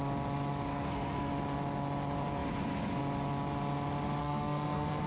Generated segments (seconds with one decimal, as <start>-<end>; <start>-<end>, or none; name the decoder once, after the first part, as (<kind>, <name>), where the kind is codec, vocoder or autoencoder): 0.7-1.3 (codec, SNAC); 4.2-5.1